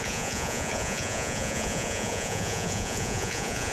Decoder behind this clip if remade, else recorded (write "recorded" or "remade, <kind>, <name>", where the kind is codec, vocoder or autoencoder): remade, vocoder, Vocos